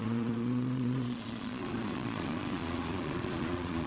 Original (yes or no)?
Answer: no